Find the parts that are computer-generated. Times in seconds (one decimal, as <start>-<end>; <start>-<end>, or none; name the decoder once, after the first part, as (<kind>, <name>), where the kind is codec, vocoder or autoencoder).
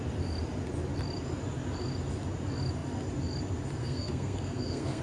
3.8-5.0 (codec, SNAC)